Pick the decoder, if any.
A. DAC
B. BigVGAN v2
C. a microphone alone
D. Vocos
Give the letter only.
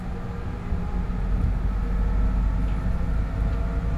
C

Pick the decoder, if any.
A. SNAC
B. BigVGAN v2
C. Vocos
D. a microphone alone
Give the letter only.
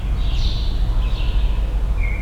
D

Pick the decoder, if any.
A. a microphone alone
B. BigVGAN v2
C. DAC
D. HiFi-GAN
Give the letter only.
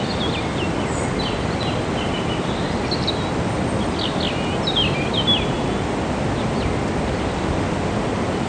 A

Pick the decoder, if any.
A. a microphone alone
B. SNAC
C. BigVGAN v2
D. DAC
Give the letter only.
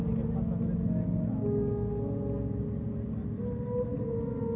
A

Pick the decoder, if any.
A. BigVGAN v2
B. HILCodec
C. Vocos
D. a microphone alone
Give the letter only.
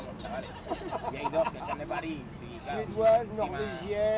D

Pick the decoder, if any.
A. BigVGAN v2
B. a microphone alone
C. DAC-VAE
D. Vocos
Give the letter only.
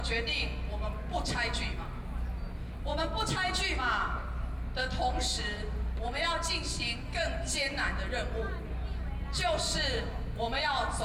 B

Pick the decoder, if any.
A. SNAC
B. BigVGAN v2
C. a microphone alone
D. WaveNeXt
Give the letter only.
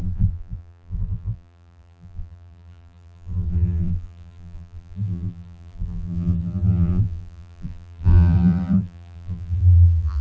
B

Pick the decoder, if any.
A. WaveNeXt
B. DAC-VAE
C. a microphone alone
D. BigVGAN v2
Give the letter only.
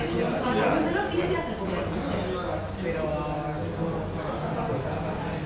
C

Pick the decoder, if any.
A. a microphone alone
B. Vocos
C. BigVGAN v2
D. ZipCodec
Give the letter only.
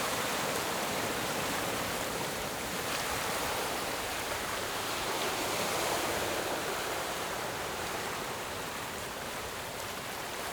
C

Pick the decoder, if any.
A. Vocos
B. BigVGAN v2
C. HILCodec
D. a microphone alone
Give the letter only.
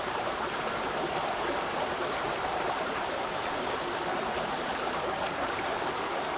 B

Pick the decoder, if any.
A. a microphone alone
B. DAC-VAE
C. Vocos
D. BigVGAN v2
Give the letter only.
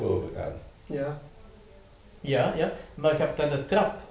A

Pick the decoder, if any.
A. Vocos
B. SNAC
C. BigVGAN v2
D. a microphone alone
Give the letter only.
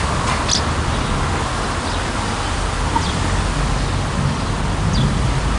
D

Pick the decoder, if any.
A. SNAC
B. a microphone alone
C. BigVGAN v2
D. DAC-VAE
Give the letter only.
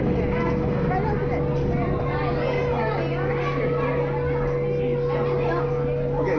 B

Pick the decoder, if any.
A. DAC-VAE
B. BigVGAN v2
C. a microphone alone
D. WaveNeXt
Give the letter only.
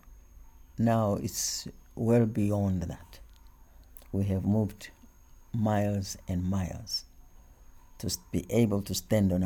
C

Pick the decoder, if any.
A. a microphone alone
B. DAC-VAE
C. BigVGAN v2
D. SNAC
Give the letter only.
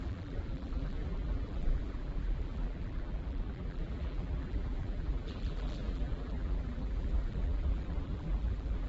C